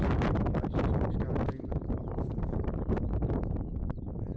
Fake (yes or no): yes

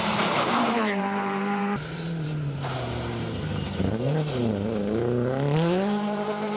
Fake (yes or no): yes